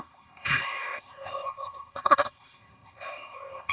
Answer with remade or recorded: remade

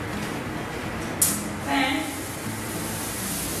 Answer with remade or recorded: recorded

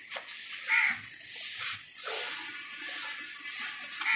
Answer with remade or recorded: recorded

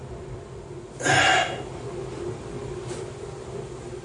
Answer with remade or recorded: recorded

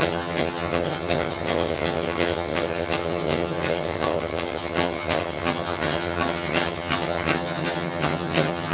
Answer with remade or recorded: remade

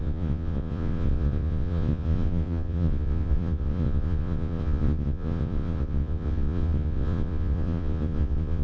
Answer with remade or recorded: remade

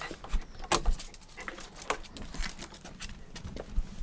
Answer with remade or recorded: recorded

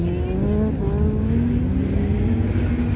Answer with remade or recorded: recorded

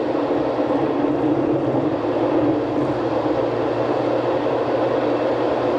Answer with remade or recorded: recorded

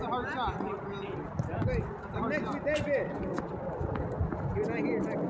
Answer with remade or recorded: recorded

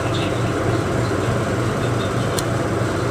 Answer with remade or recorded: recorded